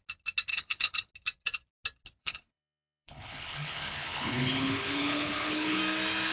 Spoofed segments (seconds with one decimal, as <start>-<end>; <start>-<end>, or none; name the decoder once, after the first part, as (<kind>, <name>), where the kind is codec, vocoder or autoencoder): 0.5-1.1 (codec, HILCodec); 2.2-5.8